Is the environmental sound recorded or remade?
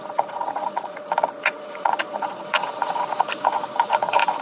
remade